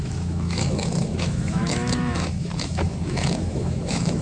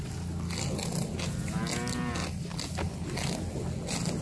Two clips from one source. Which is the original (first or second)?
second